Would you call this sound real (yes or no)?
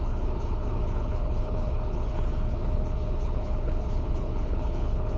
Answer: no